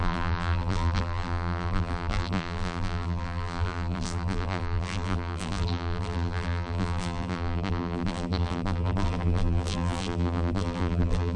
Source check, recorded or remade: remade